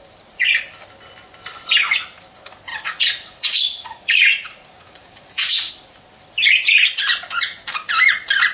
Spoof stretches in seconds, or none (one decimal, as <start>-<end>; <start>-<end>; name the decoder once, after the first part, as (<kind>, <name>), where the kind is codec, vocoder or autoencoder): 2.7-5.7 (vocoder, Vocos)